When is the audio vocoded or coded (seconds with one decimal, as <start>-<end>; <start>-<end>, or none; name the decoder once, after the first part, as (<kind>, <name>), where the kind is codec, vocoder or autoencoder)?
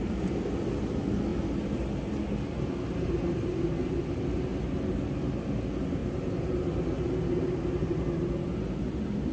none